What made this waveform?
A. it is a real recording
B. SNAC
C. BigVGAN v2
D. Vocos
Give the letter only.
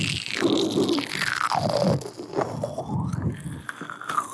A